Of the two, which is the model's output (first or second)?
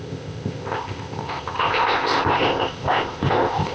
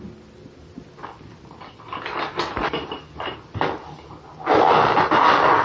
first